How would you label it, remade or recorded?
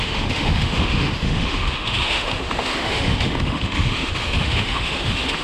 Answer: remade